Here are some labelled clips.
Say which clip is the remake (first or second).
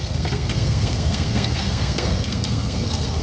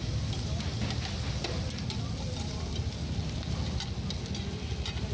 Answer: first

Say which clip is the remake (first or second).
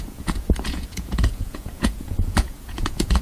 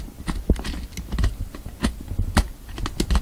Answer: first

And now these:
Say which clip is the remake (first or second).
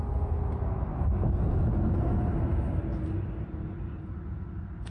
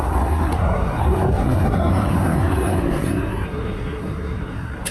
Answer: second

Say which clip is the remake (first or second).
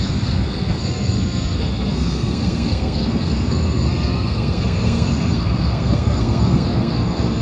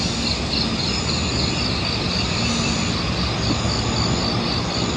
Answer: first